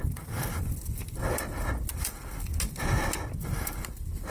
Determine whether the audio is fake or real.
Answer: real